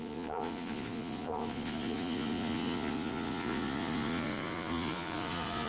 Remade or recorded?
remade